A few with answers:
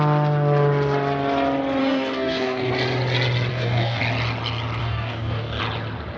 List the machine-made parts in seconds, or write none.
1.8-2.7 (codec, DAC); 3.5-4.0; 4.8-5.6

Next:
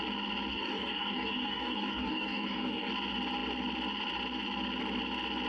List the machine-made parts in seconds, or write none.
0.5-2.9 (codec, DAC)